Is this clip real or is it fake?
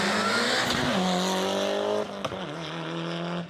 real